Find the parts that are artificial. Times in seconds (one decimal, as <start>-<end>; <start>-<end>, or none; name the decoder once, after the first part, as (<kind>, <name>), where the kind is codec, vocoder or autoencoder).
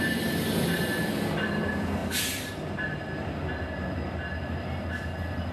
none